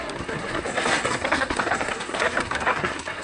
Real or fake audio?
fake